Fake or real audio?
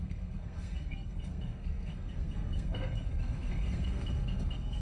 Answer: fake